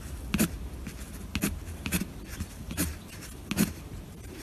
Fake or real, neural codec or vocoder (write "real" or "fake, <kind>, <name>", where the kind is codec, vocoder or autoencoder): real